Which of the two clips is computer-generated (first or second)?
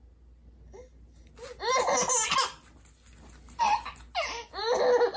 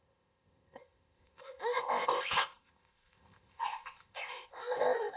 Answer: second